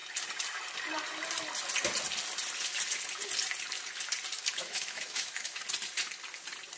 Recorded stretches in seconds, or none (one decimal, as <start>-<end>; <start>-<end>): 0.0-4.6; 5.6-6.8